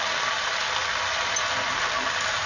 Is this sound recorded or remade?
recorded